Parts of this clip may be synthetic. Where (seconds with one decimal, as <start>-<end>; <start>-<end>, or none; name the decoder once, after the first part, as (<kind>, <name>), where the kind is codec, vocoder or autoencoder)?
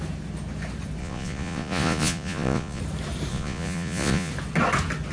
1.0-2.8 (vocoder, Vocos); 3.3-4.3